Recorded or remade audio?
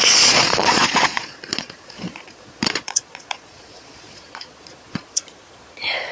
remade